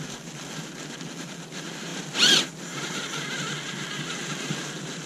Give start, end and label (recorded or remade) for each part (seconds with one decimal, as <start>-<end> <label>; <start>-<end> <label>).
0.0-5.1 recorded